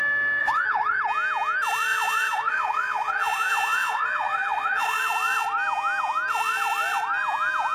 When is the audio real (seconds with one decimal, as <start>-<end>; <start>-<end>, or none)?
0.0-0.4; 1.0-1.9; 5.0-7.7